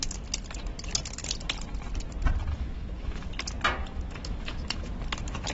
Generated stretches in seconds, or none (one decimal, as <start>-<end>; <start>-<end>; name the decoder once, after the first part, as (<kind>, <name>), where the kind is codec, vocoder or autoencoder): 2.5-3.3 (autoencoder, DAC-VAE); 3.8-4.9